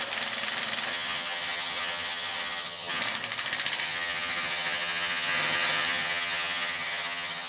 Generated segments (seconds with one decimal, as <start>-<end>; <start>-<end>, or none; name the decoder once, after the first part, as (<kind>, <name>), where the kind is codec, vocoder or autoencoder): 0.9-3.0 (vocoder, HiFi-GAN); 3.8-7.5